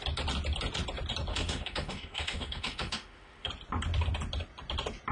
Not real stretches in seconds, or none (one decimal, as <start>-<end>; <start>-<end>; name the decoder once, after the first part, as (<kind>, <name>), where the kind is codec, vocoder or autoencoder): 1.3-3.5 (autoencoder, DAC-VAE)